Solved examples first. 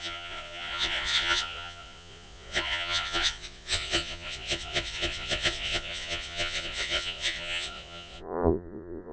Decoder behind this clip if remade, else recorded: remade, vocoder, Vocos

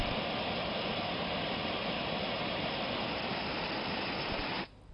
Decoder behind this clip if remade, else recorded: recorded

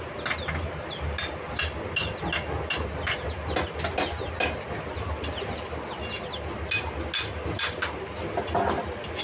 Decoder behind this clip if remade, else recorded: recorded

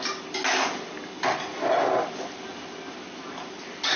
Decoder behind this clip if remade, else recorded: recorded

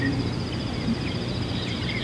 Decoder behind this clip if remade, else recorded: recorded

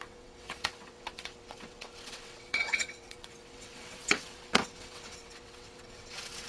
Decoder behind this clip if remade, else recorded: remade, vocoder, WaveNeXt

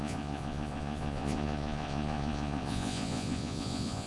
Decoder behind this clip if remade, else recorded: remade, vocoder, Vocos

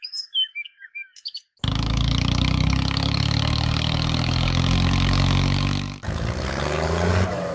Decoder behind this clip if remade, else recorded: remade, codec, DAC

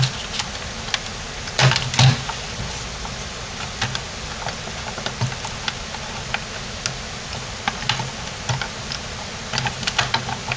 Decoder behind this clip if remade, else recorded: recorded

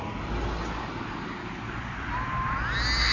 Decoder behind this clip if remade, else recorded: recorded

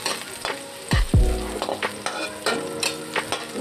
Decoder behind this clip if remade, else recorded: recorded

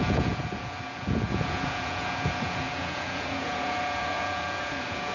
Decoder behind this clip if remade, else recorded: remade, vocoder, Vocos